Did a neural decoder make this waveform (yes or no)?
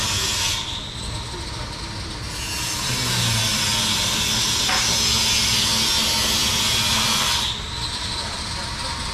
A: no